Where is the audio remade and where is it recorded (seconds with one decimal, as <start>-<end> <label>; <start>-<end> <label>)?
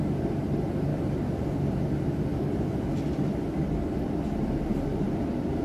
0.0-5.6 recorded